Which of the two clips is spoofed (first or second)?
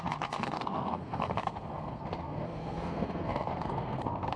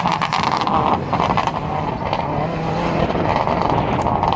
first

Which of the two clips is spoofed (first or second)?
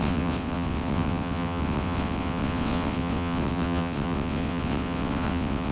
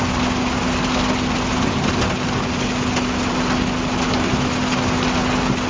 first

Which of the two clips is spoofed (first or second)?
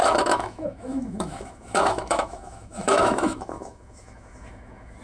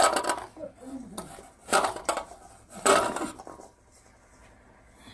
first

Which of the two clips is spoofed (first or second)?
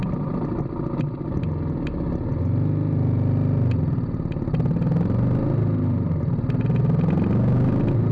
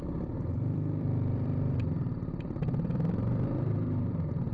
second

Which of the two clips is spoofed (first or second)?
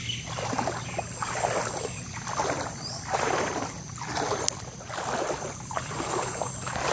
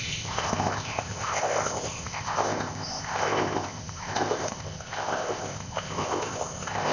second